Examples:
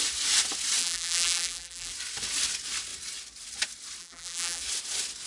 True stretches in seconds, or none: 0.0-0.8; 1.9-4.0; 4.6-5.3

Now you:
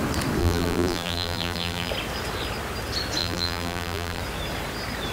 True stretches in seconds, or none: 0.0-0.4; 1.9-3.2; 4.2-5.1

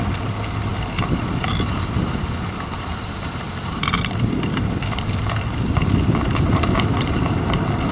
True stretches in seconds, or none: 0.0-2.9; 6.2-7.9

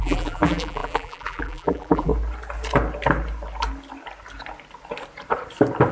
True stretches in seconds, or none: 2.1-5.9

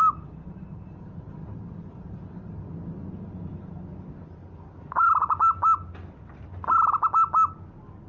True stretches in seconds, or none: 0.0-1.4; 2.2-8.1